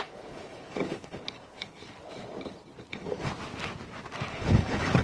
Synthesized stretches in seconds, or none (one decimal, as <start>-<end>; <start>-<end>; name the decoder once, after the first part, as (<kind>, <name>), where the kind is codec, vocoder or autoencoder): 0.0-1.8 (codec, HILCodec); 2.9-3.3; 4.3-5.0